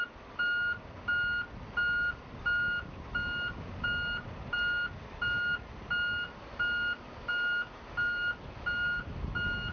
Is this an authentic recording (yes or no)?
yes